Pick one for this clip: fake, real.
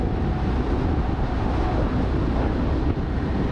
real